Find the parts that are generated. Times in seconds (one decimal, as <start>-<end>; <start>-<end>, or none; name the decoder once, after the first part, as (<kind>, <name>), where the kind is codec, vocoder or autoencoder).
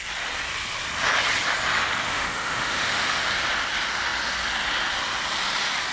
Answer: 2.1-3.3 (autoencoder, DAC-VAE)